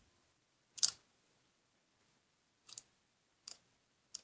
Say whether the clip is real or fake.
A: real